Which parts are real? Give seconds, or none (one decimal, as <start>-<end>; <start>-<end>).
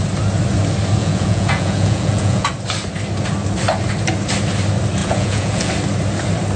0.0-1.0; 2.5-5.0; 5.7-6.6